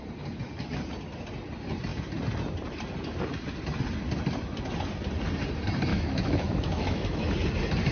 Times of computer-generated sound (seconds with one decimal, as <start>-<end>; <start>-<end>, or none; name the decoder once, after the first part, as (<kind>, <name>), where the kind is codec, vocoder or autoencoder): 5.9-7.3 (autoencoder, DAC-VAE)